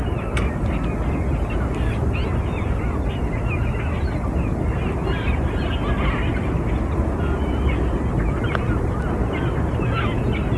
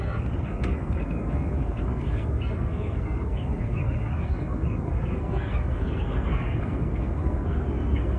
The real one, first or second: first